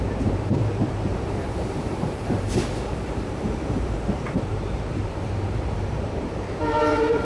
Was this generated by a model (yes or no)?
yes